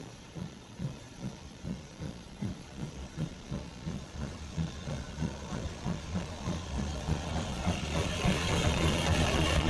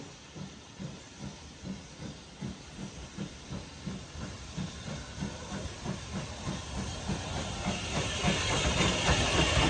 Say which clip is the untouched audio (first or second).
second